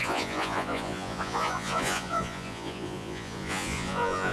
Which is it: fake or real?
fake